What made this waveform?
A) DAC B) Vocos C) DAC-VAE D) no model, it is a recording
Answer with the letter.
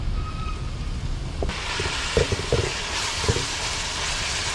D